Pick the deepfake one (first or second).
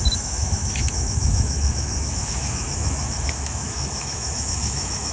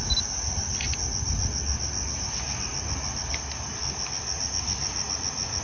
first